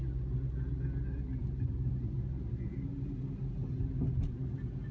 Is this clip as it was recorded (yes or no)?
yes